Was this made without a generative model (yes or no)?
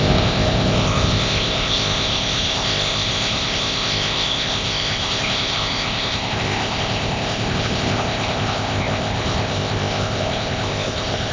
no